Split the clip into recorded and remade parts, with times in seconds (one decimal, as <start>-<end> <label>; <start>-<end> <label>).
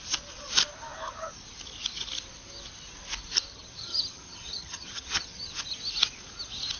0.0-3.5 recorded; 3.5-5.6 remade; 5.6-6.8 recorded